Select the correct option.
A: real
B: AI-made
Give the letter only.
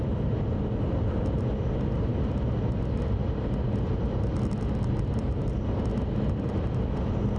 A